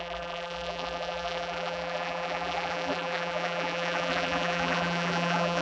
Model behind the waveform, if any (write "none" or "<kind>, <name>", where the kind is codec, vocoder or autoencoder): vocoder, BigVGAN v2